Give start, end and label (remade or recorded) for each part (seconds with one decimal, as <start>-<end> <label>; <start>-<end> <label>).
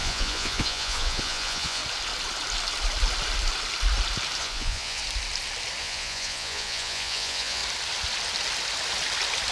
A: 0.0-1.8 remade; 1.8-4.4 recorded; 4.4-5.0 remade; 5.0-5.8 recorded; 5.8-7.6 remade; 7.6-9.5 recorded